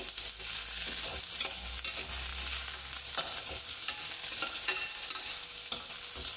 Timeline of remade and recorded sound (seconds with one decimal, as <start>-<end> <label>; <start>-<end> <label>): 0.0-6.4 recorded